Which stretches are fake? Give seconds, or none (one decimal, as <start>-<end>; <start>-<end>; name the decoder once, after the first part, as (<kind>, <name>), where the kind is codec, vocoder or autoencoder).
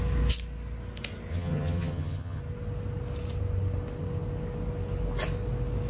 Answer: 1.3-2.4 (vocoder, HiFi-GAN)